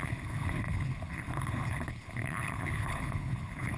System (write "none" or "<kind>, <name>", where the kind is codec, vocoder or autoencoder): codec, HILCodec